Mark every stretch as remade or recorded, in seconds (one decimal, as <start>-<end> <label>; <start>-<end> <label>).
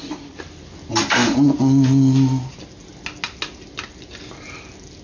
0.0-5.0 recorded